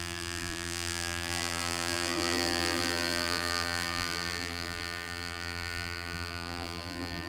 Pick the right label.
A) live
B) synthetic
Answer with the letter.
B